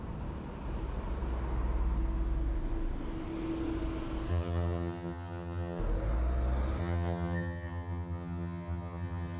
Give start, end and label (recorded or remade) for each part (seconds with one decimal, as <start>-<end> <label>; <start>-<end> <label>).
0.0-4.3 recorded; 4.3-5.8 remade; 5.8-6.8 recorded; 6.8-9.4 remade

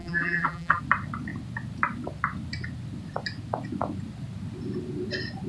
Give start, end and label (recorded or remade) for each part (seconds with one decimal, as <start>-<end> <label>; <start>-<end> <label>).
0.0-0.8 remade; 0.8-5.5 recorded

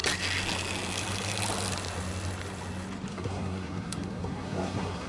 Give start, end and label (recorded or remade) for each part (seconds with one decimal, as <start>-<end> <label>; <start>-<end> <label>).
0.0-3.1 recorded; 3.1-5.1 remade

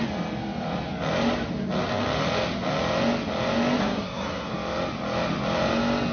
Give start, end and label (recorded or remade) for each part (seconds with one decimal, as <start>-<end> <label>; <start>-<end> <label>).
0.0-3.8 recorded; 3.8-4.5 remade; 4.5-6.1 recorded